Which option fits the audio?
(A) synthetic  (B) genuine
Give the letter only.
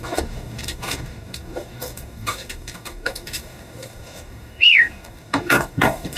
A